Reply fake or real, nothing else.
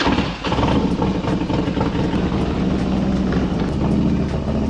real